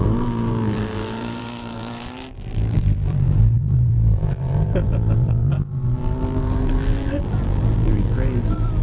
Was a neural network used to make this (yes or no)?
yes